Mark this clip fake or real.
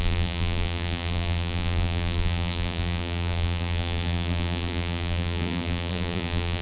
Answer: fake